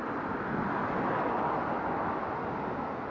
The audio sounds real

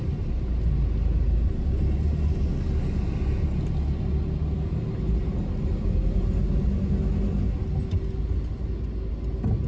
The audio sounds real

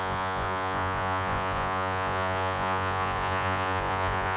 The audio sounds fake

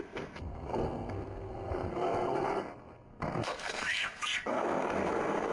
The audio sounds fake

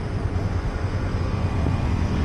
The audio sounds fake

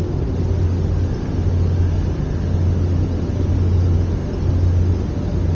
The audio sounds real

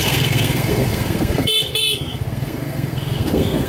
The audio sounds fake